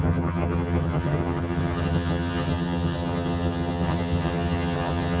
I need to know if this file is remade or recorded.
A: remade